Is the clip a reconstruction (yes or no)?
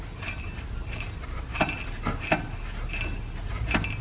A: no